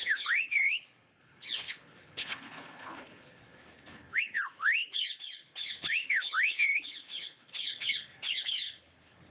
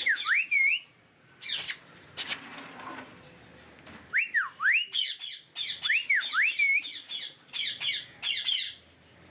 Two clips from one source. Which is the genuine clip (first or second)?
second